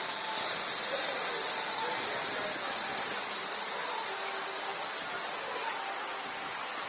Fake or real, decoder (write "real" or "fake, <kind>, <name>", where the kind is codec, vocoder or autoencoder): real